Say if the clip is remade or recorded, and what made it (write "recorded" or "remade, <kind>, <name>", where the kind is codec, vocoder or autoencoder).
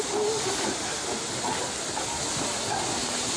recorded